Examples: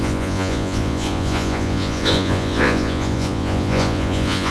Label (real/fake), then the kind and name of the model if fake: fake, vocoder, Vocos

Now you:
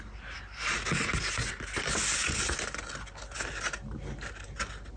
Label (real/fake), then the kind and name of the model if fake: real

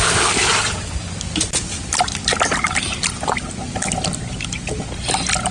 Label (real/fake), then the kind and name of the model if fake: real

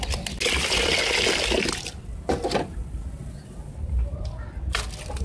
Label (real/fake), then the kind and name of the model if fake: real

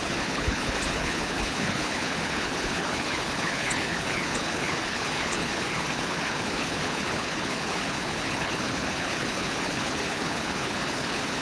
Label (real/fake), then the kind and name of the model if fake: fake, codec, HILCodec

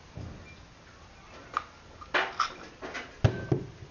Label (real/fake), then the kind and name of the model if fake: real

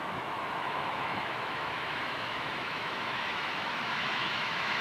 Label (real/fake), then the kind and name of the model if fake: fake, autoencoder, DAC-VAE